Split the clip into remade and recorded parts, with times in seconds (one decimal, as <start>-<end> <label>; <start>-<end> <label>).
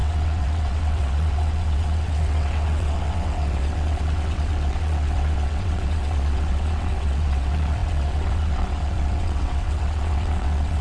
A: 0.0-10.8 remade